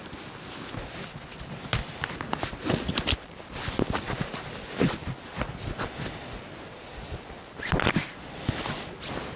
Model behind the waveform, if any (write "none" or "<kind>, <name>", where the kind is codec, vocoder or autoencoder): none